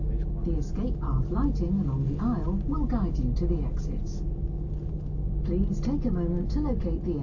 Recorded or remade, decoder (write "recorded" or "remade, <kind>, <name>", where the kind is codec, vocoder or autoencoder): recorded